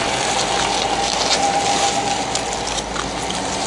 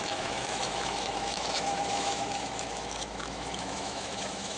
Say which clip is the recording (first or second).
first